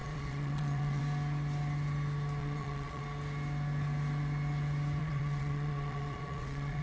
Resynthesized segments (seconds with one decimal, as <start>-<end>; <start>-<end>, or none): 0.0-1.0; 2.4-3.0; 5.0-6.8

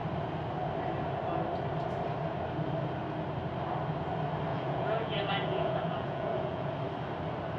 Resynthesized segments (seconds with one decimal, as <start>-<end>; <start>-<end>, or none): 4.5-6.7

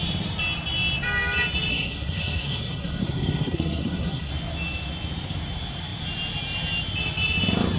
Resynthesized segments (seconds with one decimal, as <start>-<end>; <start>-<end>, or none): 1.7-4.3

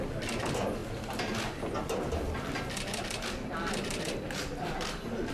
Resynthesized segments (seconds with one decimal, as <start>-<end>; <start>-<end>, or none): none